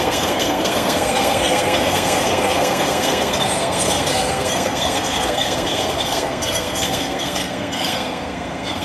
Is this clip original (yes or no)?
no